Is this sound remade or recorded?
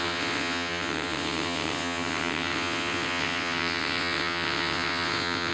remade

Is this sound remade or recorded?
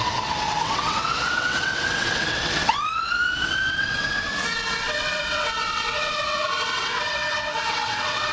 remade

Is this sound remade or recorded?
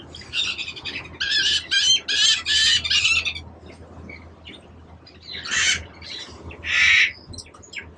recorded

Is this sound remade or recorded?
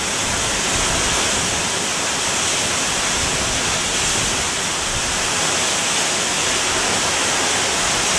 recorded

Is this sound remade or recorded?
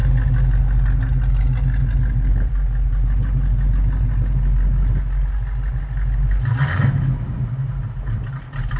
recorded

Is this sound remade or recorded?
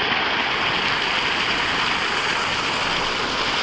recorded